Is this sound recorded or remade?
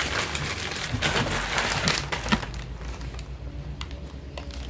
remade